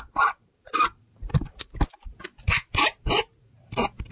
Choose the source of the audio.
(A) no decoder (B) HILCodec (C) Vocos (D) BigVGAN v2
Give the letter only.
D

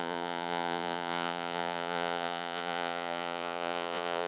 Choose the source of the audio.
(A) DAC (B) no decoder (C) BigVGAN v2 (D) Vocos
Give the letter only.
D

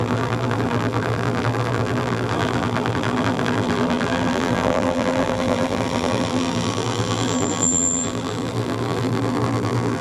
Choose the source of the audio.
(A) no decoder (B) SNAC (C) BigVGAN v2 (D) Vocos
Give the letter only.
C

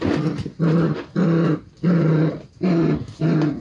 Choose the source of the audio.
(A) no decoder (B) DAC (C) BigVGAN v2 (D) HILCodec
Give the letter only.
A